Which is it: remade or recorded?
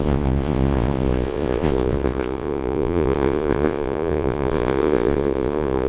remade